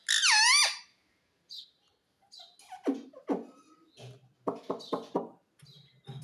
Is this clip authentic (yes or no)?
yes